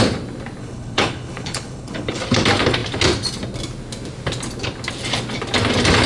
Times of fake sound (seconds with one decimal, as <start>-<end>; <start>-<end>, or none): 0.6-2.2